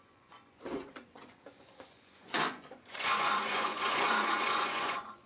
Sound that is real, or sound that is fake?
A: fake